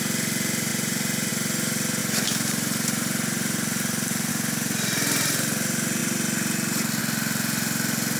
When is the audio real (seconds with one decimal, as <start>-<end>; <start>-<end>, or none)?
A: 0.0-0.7; 1.3-2.0; 4.3-8.2